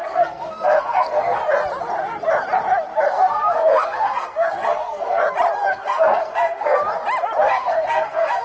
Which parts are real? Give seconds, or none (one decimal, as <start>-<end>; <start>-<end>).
1.4-3.1; 5.2-5.7; 6.8-7.5